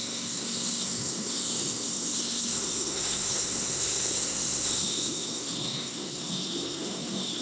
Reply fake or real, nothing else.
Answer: fake